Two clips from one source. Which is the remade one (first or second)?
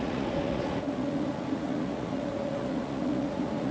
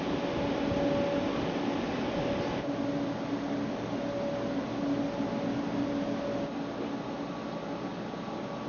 first